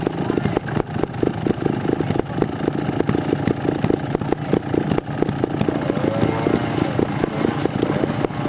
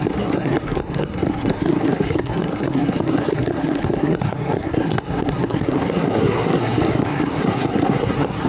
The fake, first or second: second